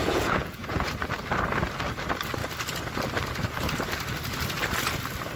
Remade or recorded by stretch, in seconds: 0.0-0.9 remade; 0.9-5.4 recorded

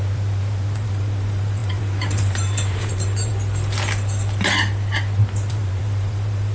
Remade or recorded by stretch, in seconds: 0.0-3.3 remade; 3.3-5.5 recorded; 5.5-6.5 remade

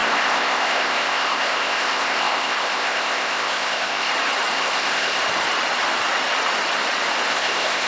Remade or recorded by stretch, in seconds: 0.0-4.1 remade; 4.1-4.5 recorded; 4.5-5.2 remade; 5.2-7.3 recorded; 7.3-7.9 remade

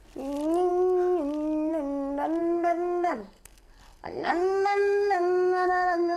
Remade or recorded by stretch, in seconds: 0.0-2.4 recorded; 2.4-6.2 remade

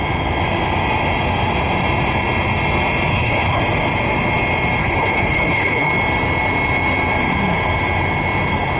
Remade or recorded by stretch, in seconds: 0.0-3.1 recorded; 3.1-3.6 remade; 3.6-4.8 recorded; 4.8-5.9 remade; 5.9-8.8 recorded

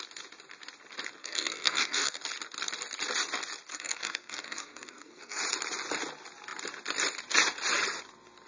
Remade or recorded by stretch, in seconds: 0.0-1.2 recorded; 1.2-2.2 remade; 2.2-3.7 recorded; 3.7-5.4 remade; 5.4-8.5 recorded

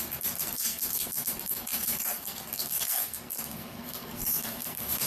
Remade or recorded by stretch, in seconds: 0.0-5.1 remade